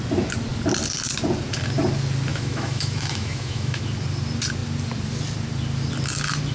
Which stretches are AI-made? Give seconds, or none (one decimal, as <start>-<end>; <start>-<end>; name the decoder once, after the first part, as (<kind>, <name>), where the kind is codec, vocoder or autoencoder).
2.3-3.8 (autoencoder, DAC-VAE)